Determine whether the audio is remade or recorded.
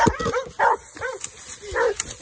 recorded